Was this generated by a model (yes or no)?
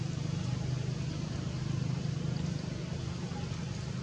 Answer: no